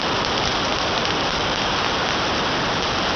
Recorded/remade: recorded